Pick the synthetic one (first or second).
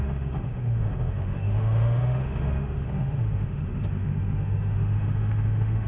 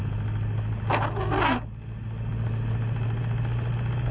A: first